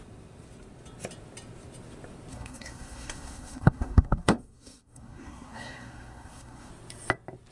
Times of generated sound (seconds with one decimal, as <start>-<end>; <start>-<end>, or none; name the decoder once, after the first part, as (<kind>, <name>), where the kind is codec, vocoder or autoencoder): 2.3-6.7 (codec, SNAC)